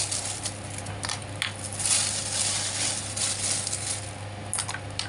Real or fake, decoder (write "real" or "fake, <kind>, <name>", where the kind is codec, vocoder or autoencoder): real